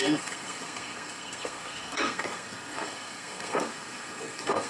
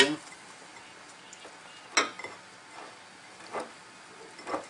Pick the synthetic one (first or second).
first